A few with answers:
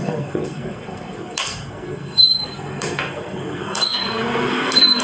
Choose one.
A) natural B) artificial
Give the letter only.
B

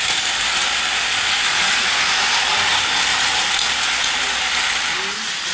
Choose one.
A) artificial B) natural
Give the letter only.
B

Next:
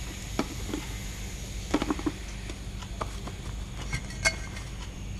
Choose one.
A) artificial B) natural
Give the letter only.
B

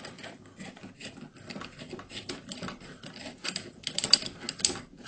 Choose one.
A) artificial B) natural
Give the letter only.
B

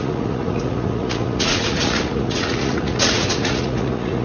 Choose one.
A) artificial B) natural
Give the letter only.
A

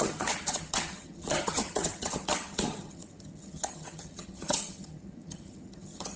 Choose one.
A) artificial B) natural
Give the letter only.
A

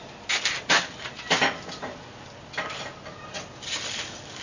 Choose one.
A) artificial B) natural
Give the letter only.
B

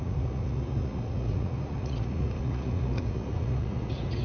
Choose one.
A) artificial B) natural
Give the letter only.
A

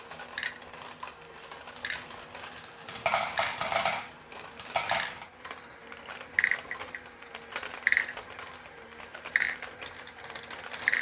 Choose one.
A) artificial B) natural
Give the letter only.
B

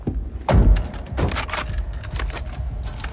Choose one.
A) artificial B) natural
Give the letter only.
B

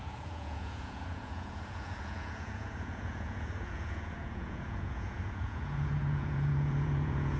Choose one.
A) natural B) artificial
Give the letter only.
B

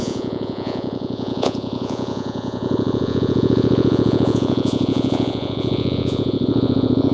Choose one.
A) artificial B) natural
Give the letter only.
A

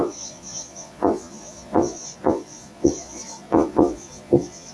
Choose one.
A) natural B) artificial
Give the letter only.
B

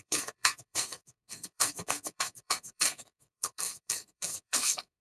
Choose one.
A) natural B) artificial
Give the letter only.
B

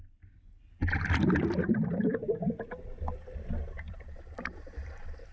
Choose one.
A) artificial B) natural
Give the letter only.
A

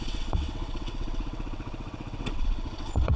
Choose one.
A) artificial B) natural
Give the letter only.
A